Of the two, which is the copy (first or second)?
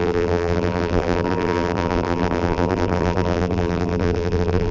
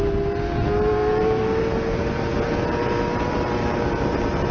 first